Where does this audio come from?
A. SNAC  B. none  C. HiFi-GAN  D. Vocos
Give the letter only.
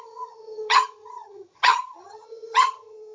C